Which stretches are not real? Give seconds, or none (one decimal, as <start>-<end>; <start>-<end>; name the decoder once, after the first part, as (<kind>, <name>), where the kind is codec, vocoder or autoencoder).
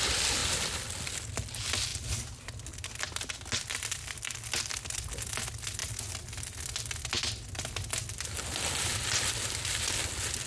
none